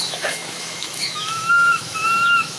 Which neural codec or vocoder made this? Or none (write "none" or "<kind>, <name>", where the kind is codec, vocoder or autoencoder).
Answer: autoencoder, DAC-VAE